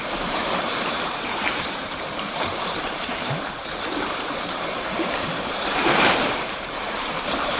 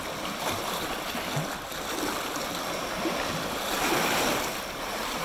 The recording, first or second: second